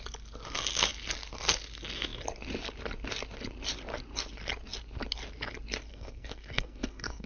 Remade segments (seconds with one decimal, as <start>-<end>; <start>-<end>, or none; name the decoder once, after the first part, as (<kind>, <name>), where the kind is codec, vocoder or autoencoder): 5.9-7.3 (codec, SNAC)